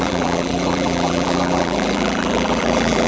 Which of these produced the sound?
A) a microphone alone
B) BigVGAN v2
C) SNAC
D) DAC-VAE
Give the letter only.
B